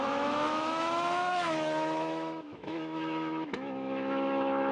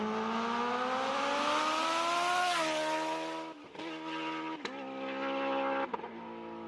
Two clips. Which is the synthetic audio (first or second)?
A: first